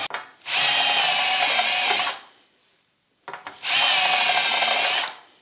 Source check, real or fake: real